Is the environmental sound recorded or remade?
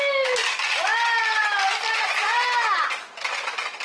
recorded